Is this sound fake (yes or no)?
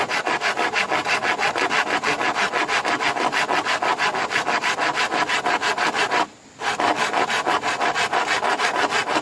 no